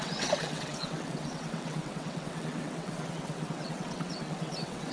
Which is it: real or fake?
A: fake